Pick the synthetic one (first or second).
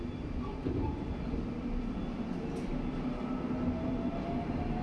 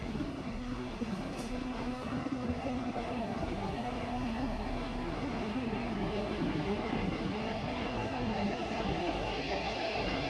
second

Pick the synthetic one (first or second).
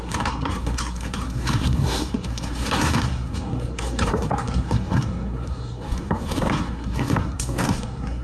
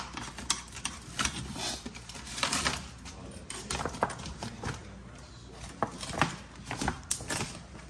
first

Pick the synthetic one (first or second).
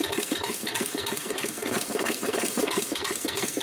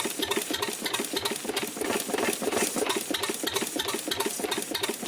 first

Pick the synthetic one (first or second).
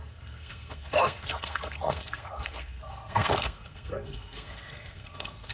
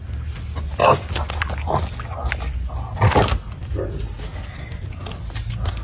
first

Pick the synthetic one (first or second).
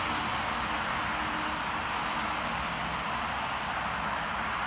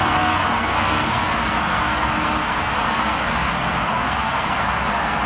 second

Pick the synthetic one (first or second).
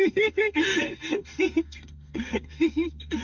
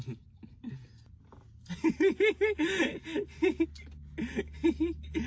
first